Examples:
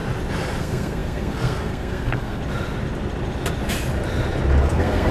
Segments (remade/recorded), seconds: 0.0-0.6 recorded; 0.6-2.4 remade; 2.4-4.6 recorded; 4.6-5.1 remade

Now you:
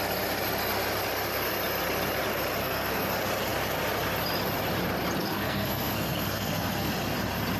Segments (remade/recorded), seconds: 0.0-2.6 recorded; 2.6-3.1 remade; 3.1-5.2 recorded; 5.2-6.9 remade; 6.9-7.6 recorded

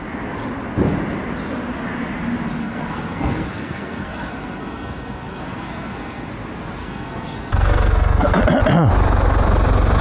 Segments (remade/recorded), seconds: 0.0-2.6 recorded; 2.6-6.3 remade; 6.3-6.8 recorded; 6.8-8.4 remade; 8.4-10.0 recorded

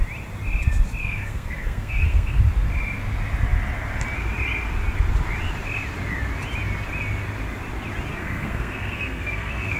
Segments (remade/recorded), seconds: 0.0-1.0 recorded; 1.0-2.4 remade; 2.4-8.2 recorded; 8.2-9.8 remade